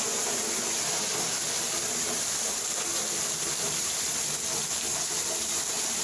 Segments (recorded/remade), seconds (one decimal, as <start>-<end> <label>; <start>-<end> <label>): 0.0-6.0 recorded